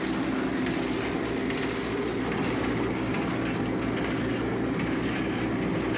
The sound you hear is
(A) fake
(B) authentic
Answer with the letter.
B